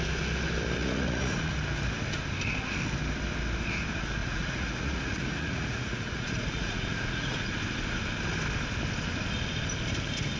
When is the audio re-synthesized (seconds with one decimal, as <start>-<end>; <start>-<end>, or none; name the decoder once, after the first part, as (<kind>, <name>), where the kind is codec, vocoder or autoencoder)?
0.8-1.5 (vocoder, Vocos); 4.2-7.5